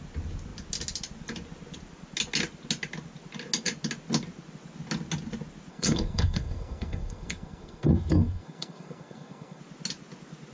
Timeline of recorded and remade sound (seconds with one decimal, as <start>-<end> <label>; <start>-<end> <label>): 0.0-5.7 recorded; 5.7-9.6 remade; 9.6-10.5 recorded